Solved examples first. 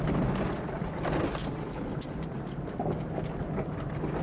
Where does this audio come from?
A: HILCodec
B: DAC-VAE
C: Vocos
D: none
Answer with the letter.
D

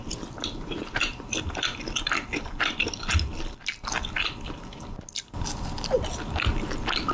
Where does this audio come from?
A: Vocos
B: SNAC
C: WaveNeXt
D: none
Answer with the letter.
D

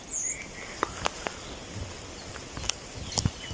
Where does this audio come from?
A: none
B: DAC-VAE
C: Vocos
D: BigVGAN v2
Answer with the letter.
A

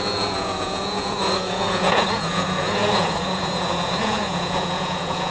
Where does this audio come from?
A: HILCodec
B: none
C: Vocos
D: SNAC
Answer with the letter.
C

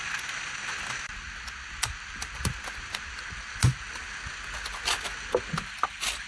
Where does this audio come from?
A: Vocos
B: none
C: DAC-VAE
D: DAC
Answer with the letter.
B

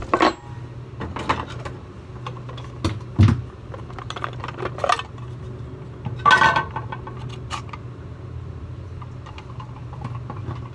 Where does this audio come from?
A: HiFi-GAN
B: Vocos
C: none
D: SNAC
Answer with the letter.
C